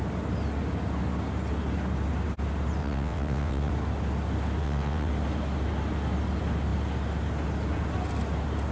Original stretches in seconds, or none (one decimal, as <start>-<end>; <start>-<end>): 0.0-2.8; 3.7-4.6; 5.1-8.7